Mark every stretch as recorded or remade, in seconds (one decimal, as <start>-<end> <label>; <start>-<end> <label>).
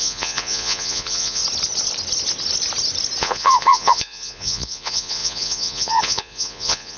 0.0-1.4 remade; 1.4-3.2 recorded; 3.2-7.0 remade